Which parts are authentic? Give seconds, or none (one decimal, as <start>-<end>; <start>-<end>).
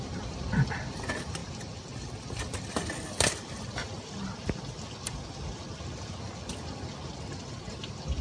0.0-8.2